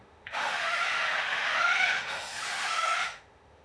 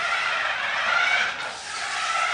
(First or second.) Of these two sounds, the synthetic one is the first